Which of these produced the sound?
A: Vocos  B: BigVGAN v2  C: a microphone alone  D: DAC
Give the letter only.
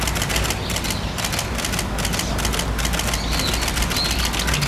C